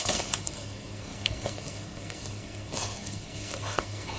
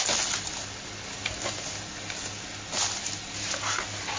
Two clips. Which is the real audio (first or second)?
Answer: second